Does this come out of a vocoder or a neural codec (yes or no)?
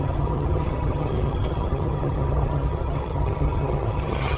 yes